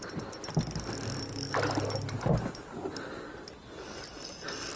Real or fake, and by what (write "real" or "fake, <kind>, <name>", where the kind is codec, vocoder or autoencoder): real